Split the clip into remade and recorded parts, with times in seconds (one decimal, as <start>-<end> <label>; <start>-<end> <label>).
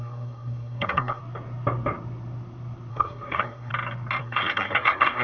0.0-1.2 remade; 1.2-2.9 recorded; 2.9-3.7 remade; 3.7-4.2 recorded; 4.2-5.2 remade